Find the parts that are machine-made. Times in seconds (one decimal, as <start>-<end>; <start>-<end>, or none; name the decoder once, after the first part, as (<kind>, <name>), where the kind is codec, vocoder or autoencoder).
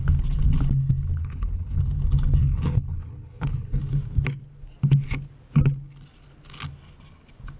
1.2-1.8 (codec, HILCodec); 2.4-3.8